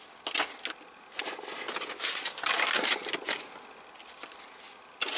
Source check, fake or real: real